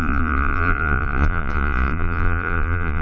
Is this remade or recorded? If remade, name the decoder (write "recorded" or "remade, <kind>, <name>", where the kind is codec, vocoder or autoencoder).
remade, vocoder, Vocos